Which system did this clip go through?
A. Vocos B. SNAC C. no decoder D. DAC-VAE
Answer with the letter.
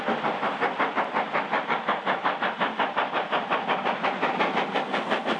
C